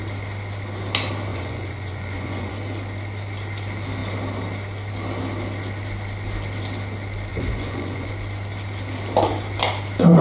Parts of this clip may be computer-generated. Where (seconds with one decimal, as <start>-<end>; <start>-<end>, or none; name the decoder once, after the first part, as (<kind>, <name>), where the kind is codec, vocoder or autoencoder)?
1.3-2.5 (vocoder, Vocos); 7.3-8.1